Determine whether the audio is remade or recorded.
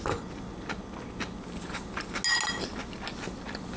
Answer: recorded